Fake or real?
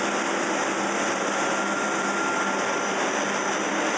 real